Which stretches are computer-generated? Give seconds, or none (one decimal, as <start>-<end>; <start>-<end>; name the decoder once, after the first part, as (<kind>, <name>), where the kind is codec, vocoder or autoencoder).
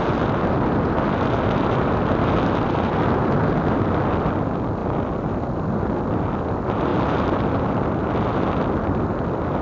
none